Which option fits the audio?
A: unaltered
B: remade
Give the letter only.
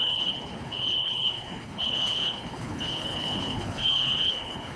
B